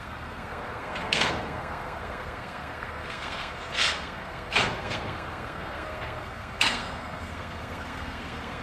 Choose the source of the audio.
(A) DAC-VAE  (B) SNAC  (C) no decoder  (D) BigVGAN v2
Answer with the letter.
B